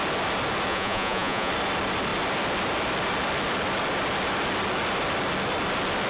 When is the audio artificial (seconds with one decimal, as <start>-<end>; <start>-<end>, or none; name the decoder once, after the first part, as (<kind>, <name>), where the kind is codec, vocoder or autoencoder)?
0.7-1.5 (vocoder, Vocos)